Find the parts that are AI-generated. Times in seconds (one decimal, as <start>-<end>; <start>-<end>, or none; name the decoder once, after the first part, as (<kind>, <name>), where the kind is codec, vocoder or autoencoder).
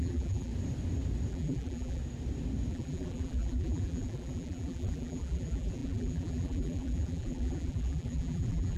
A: 0.0-0.5 (vocoder, BigVGAN v2); 1.3-2.0; 2.7-8.8